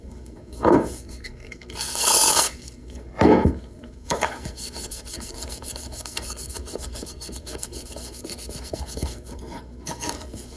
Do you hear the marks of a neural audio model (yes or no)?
yes